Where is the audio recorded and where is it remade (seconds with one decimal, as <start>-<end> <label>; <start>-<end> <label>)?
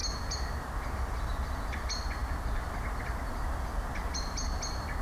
0.0-5.0 recorded